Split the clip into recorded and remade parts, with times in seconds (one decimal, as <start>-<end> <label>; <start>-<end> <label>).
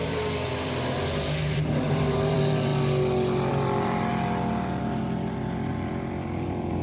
0.0-2.7 remade; 2.7-3.5 recorded; 3.5-4.1 remade; 4.1-5.7 recorded; 5.7-6.8 remade